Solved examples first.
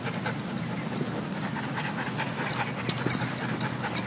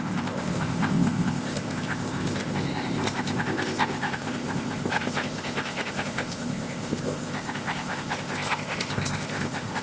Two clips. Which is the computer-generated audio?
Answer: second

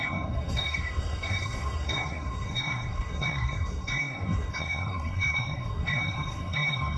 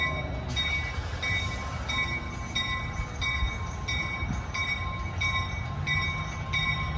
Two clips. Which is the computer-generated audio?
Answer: first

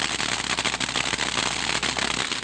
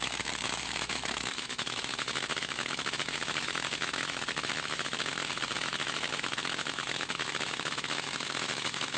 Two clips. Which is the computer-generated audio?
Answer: second